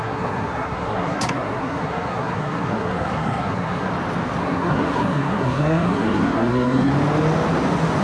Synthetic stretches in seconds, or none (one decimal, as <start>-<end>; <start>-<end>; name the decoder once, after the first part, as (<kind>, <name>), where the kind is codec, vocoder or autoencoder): 0.0-3.9 (codec, SNAC); 4.4-6.9